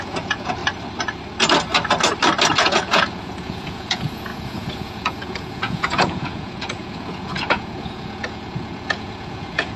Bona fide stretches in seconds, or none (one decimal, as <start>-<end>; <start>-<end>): 0.6-2.6